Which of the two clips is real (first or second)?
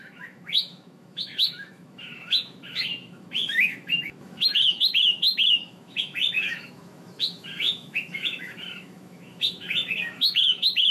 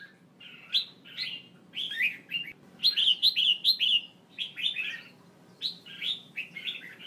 second